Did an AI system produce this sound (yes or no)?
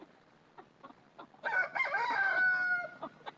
no